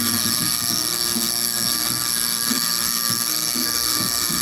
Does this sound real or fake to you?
fake